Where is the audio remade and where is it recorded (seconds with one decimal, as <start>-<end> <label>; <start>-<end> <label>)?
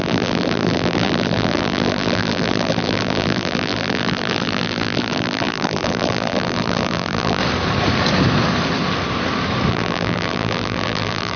0.0-7.4 remade; 7.4-9.7 recorded; 9.7-11.4 remade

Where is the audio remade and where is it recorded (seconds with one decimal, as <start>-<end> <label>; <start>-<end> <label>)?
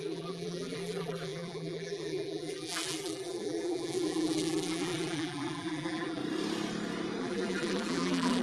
0.0-6.2 remade; 6.2-7.2 recorded; 7.2-8.4 remade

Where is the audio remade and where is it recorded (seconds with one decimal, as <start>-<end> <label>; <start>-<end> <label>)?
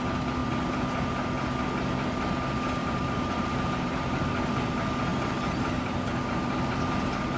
0.0-2.8 recorded; 2.8-4.1 remade; 4.1-5.1 recorded; 5.1-6.9 remade; 6.9-7.4 recorded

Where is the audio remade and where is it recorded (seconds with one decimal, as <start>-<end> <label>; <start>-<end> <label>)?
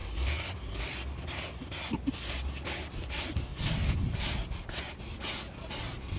0.0-6.2 recorded